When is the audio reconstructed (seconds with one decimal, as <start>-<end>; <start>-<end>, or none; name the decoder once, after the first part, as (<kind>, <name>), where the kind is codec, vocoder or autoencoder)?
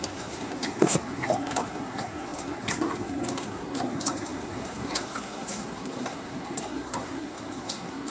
0.0-8.1 (codec, SNAC)